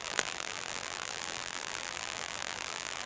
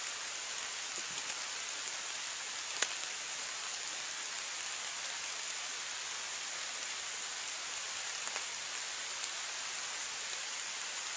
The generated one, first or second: first